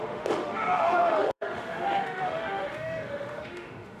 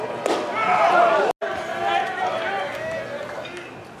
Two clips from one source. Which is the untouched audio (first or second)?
second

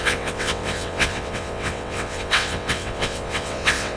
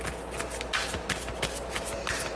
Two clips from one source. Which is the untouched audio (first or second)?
second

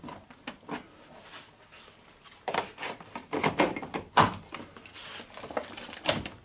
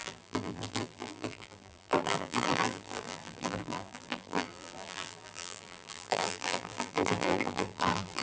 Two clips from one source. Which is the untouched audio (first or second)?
first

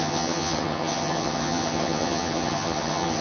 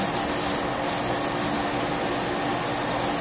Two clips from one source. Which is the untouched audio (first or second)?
second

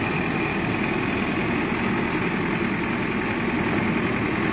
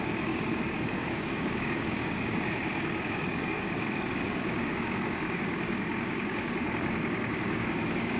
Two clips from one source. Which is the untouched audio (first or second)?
first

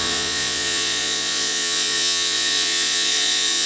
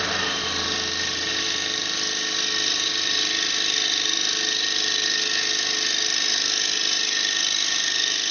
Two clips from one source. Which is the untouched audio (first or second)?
second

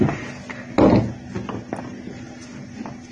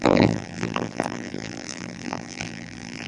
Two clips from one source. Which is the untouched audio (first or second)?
first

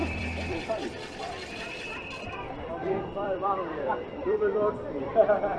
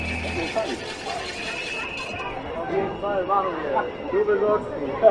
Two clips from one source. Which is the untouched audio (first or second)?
second